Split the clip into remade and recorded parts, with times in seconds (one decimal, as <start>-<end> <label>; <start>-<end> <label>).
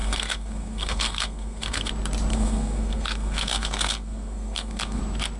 0.0-1.9 remade; 1.9-2.3 recorded; 2.3-5.0 remade; 5.0-5.4 recorded